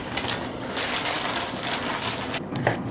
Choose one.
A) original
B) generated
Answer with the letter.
A